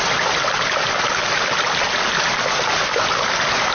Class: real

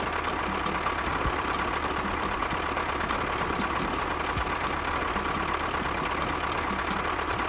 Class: real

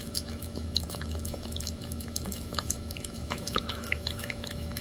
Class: fake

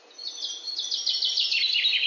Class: real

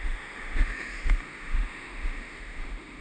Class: fake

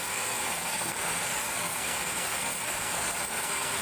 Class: fake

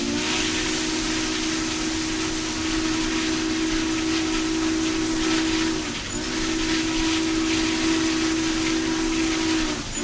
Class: real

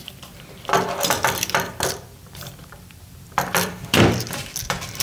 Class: fake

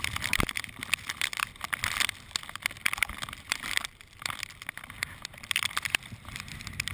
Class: fake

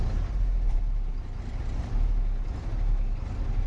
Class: real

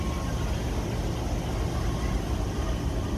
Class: real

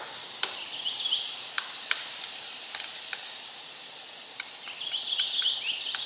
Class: real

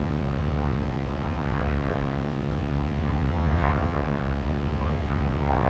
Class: fake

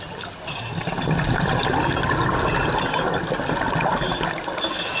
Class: real